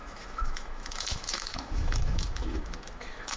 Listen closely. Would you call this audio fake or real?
fake